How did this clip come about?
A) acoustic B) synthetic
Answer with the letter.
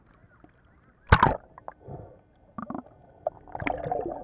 A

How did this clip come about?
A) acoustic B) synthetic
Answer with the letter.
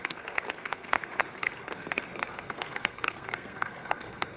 B